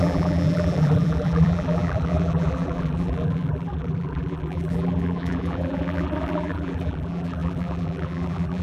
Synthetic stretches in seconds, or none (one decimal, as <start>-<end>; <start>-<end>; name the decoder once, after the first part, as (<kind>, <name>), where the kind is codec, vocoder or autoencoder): 0.0-8.6 (vocoder, BigVGAN v2)